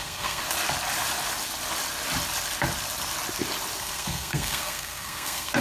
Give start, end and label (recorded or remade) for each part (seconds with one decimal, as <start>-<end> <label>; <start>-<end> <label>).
0.0-0.4 remade; 0.4-3.8 recorded; 3.8-5.6 remade